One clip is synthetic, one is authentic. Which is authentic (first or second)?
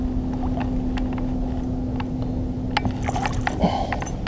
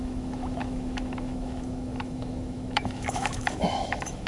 first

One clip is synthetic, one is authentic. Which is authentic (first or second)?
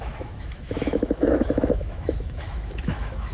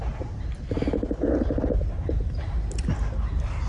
second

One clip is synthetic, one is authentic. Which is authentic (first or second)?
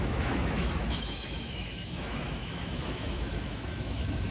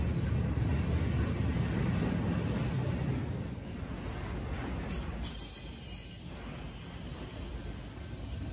second